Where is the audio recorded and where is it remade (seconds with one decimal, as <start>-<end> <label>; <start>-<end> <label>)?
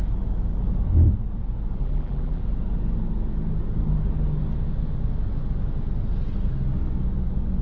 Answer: 0.0-1.8 recorded; 1.8-2.4 remade; 2.4-7.6 recorded